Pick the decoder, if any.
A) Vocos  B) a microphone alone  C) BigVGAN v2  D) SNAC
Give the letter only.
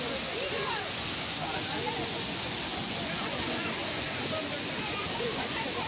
A